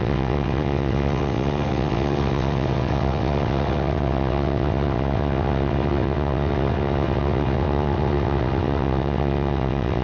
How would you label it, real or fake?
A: fake